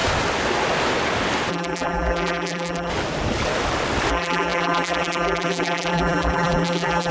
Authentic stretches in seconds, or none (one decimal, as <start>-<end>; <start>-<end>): 0.0-1.5; 2.9-4.1